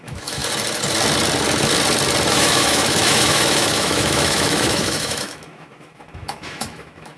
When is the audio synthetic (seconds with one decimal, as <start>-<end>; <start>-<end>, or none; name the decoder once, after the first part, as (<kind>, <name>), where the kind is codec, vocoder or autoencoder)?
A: 0.0-0.4 (autoencoder, DAC-VAE); 2.3-7.2